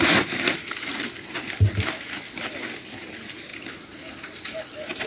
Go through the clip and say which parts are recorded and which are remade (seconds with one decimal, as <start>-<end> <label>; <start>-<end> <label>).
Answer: 0.0-5.1 recorded